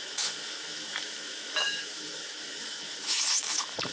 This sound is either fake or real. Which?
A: fake